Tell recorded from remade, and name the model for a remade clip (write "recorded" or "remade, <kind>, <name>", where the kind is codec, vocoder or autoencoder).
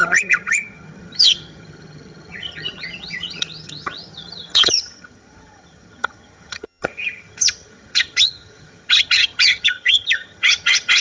remade, vocoder, HiFi-GAN